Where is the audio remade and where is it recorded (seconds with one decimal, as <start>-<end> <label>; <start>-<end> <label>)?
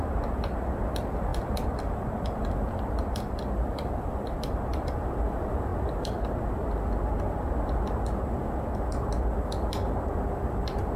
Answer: 0.0-5.7 remade; 5.7-9.4 recorded; 9.4-11.0 remade